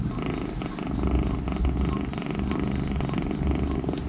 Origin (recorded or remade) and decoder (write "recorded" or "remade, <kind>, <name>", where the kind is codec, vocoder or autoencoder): recorded